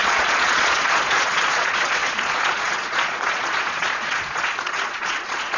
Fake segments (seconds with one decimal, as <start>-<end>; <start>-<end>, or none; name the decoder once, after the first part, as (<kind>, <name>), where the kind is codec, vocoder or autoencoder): 0.0-5.6 (vocoder, Vocos)